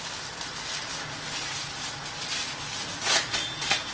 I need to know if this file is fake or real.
real